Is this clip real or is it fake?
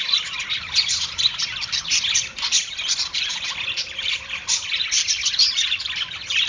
fake